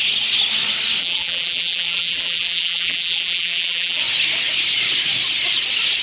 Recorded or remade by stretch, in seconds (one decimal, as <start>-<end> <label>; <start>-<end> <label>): 0.0-1.0 recorded; 1.0-4.0 remade; 4.0-6.0 recorded

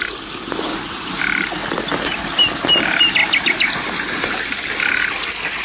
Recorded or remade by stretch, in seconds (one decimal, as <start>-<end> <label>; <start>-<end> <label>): 0.0-0.7 recorded; 0.7-1.2 remade; 1.2-5.6 recorded

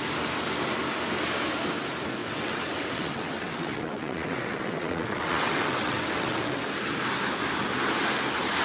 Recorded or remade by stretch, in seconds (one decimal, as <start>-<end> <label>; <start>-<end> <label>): 0.0-2.2 recorded; 2.2-6.6 remade; 6.6-8.6 recorded

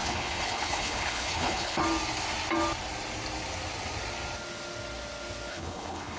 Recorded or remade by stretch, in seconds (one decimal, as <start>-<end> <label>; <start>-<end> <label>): 0.0-1.8 remade; 1.8-5.5 recorded; 5.5-6.2 remade

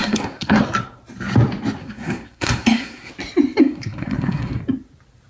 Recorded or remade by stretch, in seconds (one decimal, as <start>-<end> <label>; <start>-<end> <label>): 0.0-0.6 remade; 0.6-1.8 recorded; 1.8-3.1 remade; 3.1-3.6 recorded; 3.6-4.6 remade; 4.6-5.3 recorded

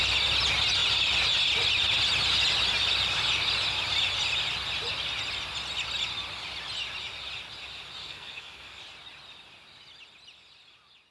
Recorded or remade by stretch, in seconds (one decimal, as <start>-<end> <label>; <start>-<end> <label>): 0.0-8.0 recorded; 8.0-8.8 remade; 8.8-11.1 recorded